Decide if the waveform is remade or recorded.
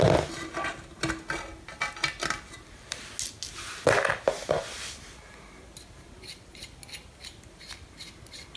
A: recorded